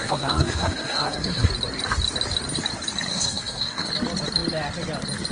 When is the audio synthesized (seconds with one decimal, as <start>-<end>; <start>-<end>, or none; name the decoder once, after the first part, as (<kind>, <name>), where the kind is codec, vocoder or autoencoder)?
0.0-1.5 (codec, SNAC); 3.1-3.9